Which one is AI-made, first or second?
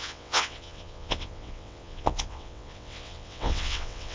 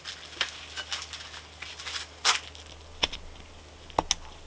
first